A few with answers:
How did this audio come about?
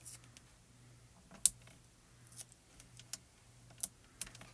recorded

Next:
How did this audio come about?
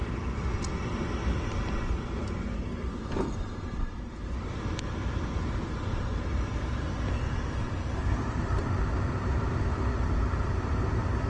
remade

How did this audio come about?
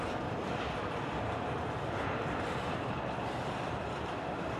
remade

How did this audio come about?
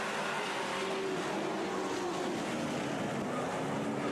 recorded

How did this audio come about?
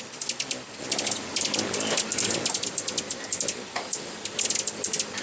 recorded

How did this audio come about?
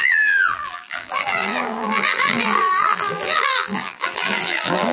remade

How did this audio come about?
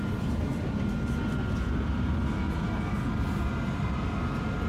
recorded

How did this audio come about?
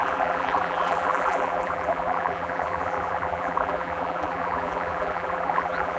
remade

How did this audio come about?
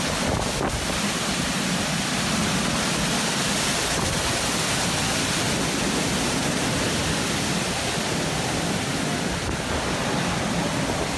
recorded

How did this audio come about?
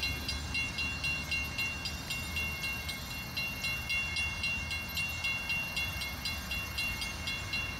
recorded